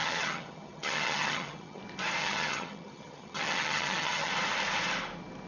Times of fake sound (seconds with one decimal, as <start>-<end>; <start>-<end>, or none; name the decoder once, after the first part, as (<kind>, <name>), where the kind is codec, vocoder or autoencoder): 0.0-1.8 (vocoder, HiFi-GAN); 2.2-4.3